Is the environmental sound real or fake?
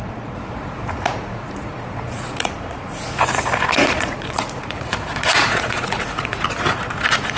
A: fake